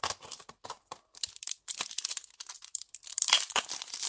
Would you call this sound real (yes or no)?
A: yes